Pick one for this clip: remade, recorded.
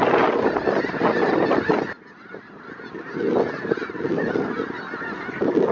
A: recorded